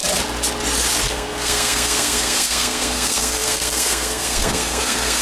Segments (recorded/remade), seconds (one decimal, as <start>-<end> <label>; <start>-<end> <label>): 0.0-1.1 recorded; 1.1-5.2 remade